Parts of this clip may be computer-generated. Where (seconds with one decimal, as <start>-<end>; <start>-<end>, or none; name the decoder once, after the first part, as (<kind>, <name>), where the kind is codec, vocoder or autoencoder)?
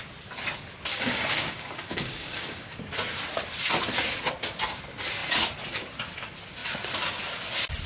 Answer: 0.9-2.8 (codec, DAC)